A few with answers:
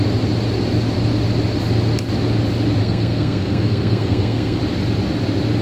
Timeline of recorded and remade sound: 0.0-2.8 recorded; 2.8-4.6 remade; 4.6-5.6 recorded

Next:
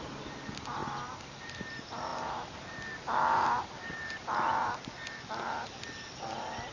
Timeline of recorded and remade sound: 0.0-6.7 recorded